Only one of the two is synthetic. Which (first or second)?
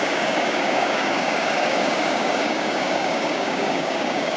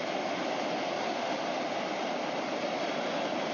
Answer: first